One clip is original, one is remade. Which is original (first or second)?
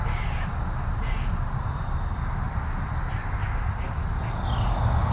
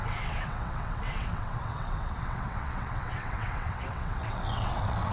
first